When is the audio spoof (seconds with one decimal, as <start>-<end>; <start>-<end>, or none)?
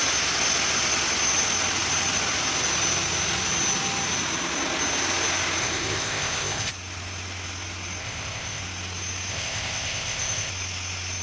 5.6-6.7; 8.0-8.6; 9.3-10.5